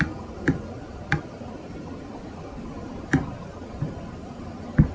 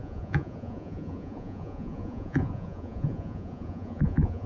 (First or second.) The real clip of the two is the first